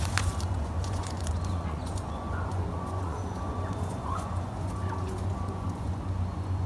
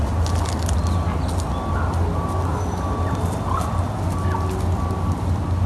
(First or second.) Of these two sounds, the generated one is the first